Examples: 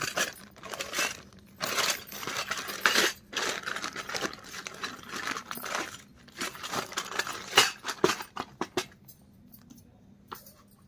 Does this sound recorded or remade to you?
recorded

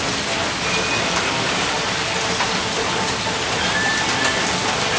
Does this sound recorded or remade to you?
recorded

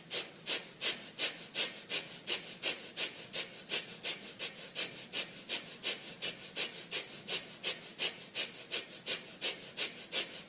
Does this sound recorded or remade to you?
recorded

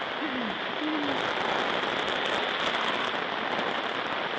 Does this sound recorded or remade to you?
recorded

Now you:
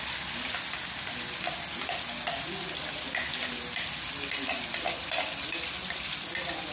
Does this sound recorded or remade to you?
recorded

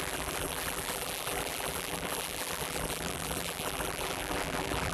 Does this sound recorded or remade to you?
remade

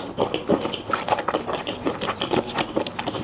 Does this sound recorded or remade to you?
recorded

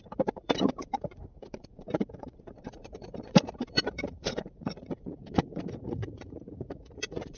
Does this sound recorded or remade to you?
remade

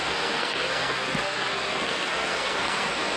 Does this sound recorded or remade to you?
remade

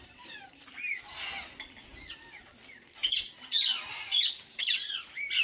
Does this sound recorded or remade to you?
recorded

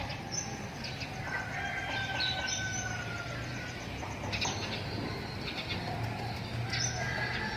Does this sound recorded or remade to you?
recorded